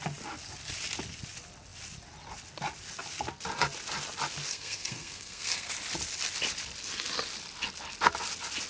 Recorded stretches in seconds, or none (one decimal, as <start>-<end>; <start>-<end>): 0.0-4.5; 5.7-8.7